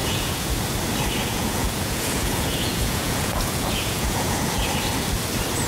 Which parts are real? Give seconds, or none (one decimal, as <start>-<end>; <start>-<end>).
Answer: 0.5-1.3; 4.7-5.7